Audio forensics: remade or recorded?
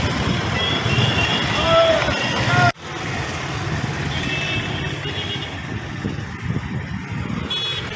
recorded